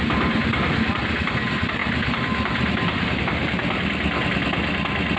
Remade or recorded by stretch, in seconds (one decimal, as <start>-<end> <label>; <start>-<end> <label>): 0.0-5.2 recorded